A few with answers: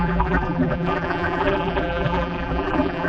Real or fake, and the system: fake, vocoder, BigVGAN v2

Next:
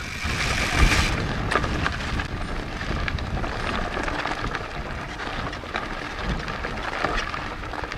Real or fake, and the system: real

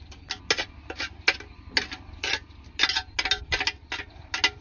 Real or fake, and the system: real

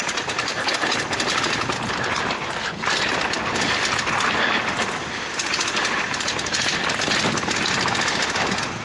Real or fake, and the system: real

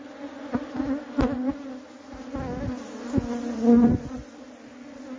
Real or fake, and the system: real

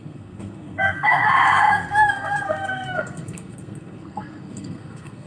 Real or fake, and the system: fake, codec, SNAC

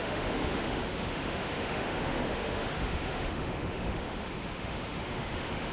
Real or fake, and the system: fake, autoencoder, DAC-VAE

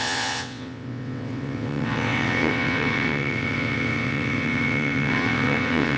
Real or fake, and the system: fake, vocoder, WaveNeXt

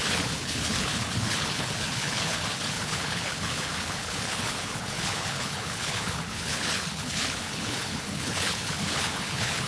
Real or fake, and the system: fake, codec, HILCodec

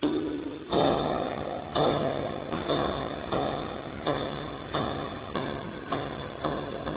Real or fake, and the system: fake, vocoder, HiFi-GAN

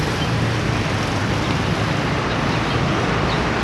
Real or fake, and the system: real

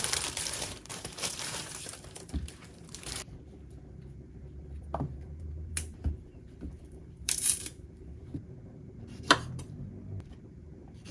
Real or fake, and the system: fake, vocoder, BigVGAN v2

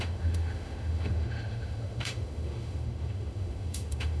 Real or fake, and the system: fake, autoencoder, DAC-VAE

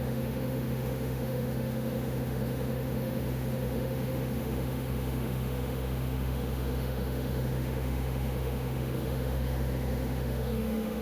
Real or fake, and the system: fake, autoencoder, DAC-VAE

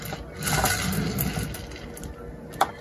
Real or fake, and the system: real